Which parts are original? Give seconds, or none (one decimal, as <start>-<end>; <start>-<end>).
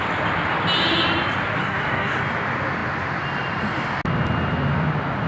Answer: 0.0-1.6; 2.2-5.3